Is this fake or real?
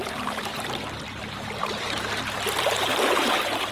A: fake